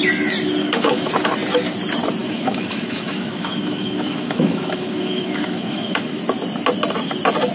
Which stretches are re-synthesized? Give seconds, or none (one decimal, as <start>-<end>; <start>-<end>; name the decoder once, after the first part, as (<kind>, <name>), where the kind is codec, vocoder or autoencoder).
0.6-1.1 (autoencoder, DAC-VAE); 2.2-6.2